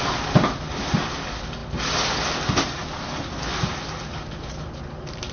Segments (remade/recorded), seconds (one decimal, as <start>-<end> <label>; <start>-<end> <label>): 0.0-5.3 recorded